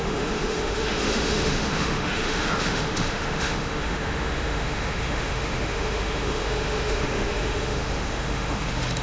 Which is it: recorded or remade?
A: remade